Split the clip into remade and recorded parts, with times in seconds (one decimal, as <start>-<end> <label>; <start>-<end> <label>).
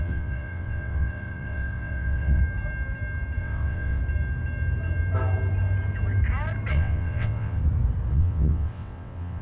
0.0-2.4 remade; 2.4-3.4 recorded; 3.4-4.0 remade; 4.0-6.7 recorded; 6.7-7.6 remade; 7.6-8.1 recorded; 8.1-9.4 remade